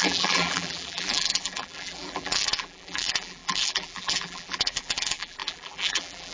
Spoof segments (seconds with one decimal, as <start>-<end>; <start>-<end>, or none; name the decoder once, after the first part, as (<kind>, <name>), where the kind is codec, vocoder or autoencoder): 0.0-6.3 (vocoder, BigVGAN v2)